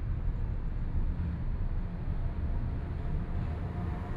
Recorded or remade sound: recorded